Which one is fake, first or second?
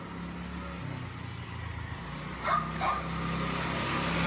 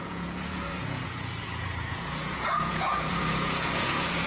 second